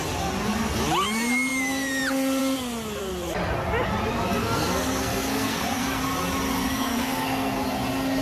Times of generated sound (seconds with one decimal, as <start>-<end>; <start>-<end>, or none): 4.4-6.0; 6.6-7.6

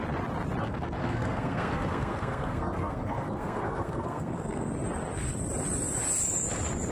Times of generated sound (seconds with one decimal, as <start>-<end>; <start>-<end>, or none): 0.6-4.7

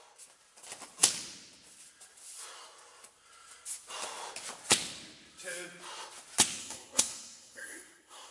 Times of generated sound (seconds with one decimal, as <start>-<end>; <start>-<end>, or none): 6.6-8.3

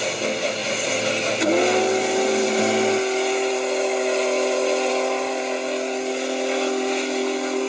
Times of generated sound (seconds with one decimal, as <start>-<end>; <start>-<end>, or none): none

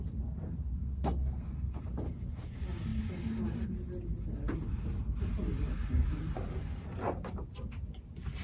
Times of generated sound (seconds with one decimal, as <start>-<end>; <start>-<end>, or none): 0.7-1.8

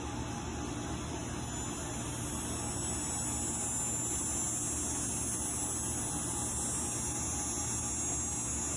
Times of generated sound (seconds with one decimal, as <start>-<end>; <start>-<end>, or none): none